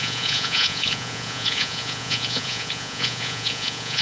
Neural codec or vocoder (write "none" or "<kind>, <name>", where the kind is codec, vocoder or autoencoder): vocoder, Vocos